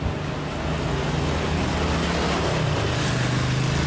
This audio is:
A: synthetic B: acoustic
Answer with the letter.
B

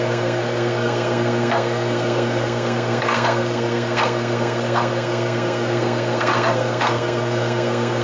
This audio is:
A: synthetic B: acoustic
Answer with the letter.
A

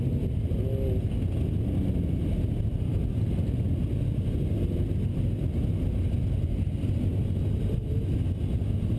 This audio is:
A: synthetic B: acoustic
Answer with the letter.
B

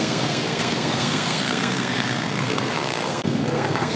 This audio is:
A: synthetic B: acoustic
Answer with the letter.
A